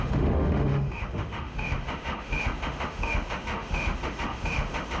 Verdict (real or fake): fake